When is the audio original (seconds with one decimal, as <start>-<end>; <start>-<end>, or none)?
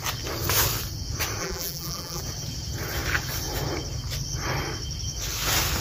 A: 0.0-1.4; 2.2-5.8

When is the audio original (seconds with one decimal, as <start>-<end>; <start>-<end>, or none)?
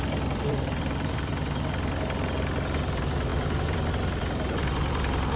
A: 1.3-1.9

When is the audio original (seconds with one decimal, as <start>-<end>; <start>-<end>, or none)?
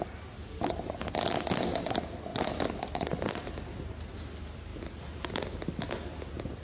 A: 0.0-6.6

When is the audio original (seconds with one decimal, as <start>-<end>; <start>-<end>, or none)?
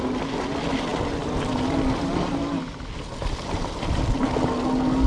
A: 0.0-3.2; 4.1-5.1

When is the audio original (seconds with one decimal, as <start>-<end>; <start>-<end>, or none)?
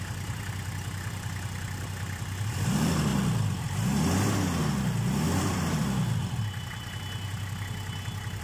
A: 3.1-5.4; 6.2-8.4